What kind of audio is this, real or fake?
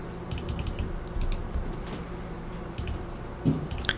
real